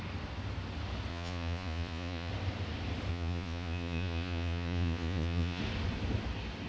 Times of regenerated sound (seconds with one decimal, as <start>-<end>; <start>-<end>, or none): 1.1-2.3; 3.1-5.6